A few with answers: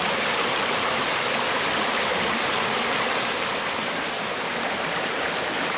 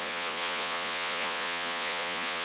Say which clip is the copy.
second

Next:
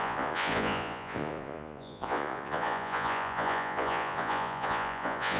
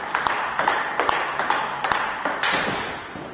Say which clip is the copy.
first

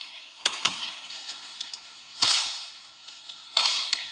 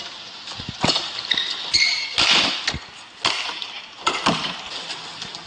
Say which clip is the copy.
first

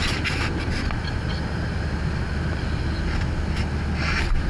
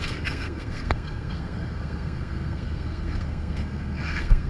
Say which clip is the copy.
second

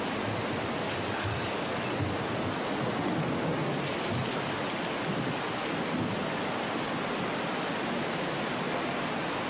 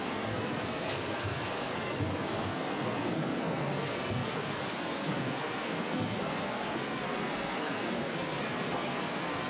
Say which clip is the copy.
second